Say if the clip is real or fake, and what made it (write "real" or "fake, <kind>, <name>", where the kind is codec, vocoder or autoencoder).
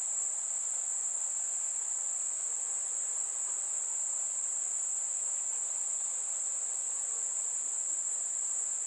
real